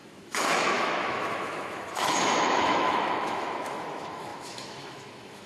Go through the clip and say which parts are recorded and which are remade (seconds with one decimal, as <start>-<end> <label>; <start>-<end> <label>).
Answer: 0.0-5.5 remade